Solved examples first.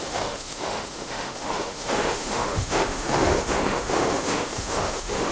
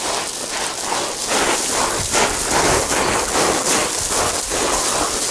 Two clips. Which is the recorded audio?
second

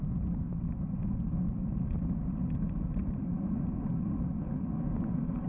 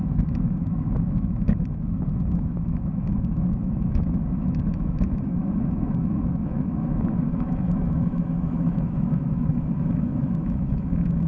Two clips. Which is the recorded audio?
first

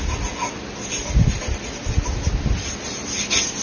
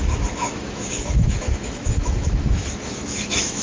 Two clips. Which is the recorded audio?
first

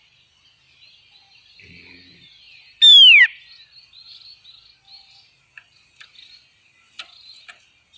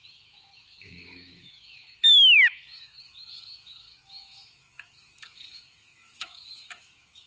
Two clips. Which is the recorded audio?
first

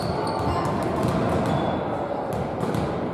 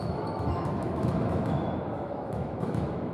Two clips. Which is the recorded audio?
first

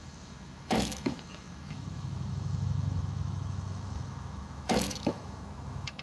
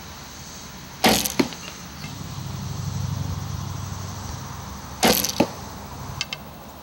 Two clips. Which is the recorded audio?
second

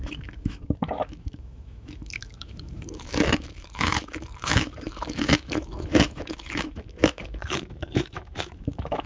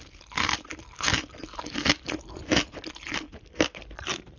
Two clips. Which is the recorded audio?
second